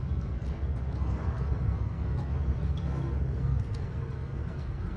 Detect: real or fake fake